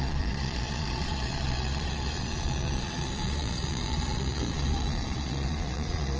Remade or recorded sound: remade